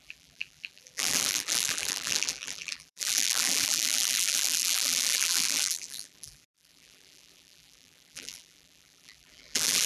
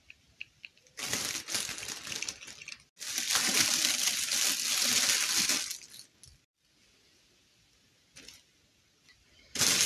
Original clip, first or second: second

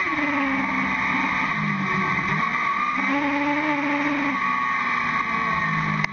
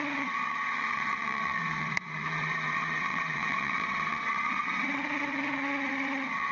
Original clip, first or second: first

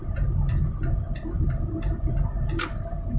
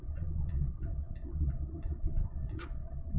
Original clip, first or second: first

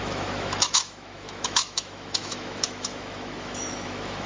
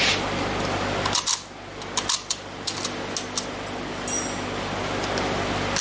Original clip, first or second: second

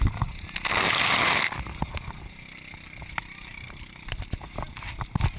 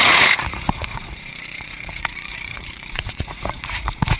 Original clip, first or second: first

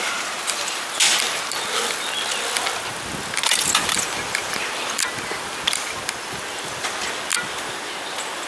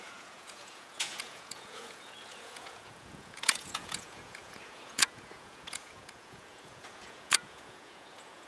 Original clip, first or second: first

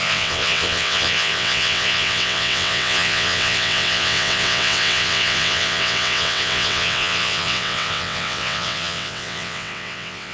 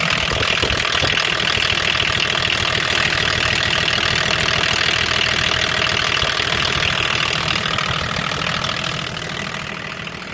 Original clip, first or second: second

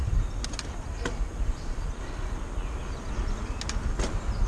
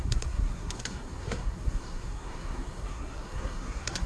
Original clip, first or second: first